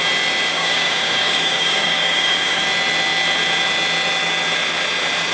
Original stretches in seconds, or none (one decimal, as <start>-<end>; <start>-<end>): 0.0-0.5; 2.6-5.3